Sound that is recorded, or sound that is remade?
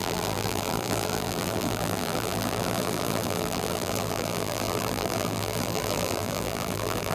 remade